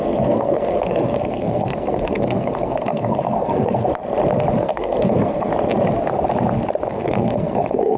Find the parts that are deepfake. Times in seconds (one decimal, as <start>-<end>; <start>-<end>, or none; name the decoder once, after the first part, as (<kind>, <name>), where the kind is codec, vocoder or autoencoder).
0.0-3.9 (codec, SNAC); 4.6-5.5; 6.9-8.0